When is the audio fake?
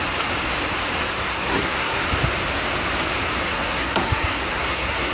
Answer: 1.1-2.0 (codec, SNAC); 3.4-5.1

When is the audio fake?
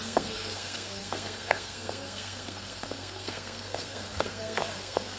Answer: 0.0-5.2 (codec, SNAC)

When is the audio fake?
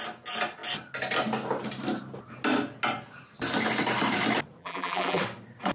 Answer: 4.6-5.2 (vocoder, BigVGAN v2)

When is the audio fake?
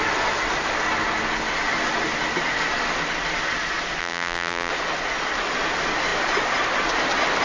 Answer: 4.0-4.7 (vocoder, BigVGAN v2)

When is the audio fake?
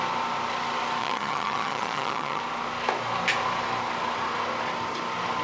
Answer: 1.0-2.4 (vocoder, HiFi-GAN)